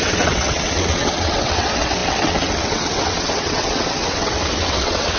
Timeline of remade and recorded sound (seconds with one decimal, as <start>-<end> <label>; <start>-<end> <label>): 0.0-5.2 remade